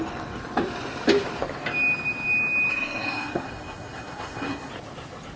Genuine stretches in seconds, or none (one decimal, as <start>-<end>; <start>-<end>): 0.0-2.7; 4.7-5.4